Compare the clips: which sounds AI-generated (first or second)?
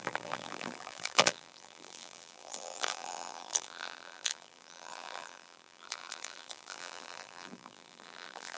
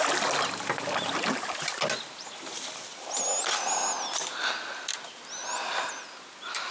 first